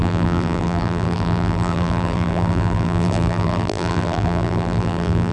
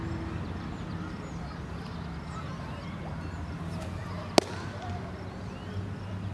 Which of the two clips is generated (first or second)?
first